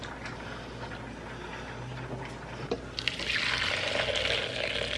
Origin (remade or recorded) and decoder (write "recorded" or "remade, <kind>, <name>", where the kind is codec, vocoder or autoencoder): recorded